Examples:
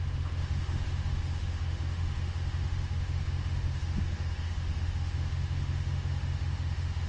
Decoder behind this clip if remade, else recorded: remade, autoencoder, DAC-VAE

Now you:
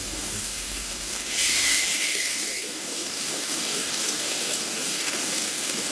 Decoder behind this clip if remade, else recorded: remade, codec, DAC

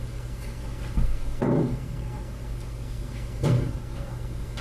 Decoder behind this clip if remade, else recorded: remade, codec, SNAC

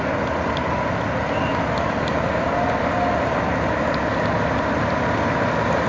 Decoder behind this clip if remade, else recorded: recorded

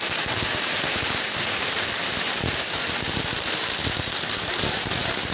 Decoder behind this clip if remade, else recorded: remade, vocoder, BigVGAN v2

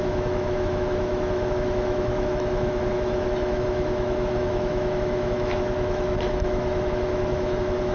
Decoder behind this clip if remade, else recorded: remade, autoencoder, DAC-VAE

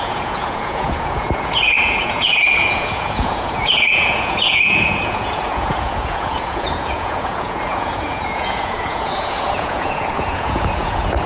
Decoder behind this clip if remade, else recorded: remade, vocoder, Vocos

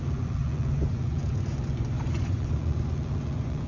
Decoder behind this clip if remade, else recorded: remade, vocoder, Vocos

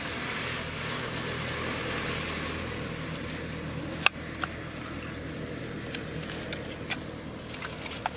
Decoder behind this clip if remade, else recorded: recorded